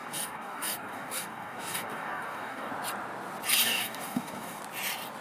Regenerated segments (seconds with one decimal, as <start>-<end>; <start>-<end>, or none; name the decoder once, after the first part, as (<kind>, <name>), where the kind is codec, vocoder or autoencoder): 0.0-2.7 (codec, DAC); 3.6-4.6